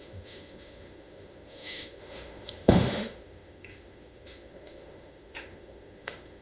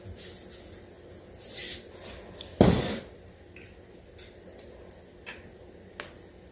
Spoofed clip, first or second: first